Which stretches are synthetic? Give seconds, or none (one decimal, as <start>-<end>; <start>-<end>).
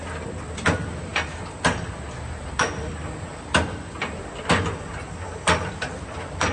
none